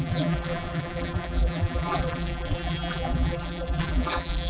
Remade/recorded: remade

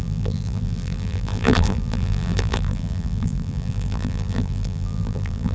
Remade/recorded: remade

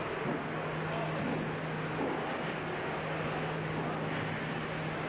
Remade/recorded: recorded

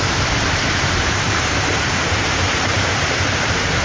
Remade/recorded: remade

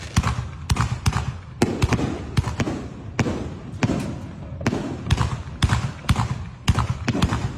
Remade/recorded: recorded